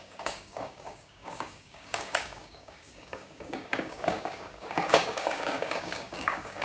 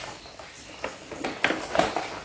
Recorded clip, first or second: second